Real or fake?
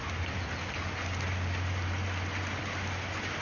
real